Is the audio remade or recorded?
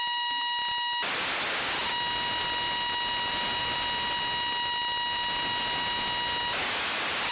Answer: recorded